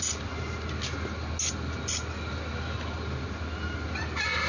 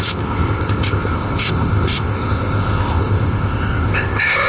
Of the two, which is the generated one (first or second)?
second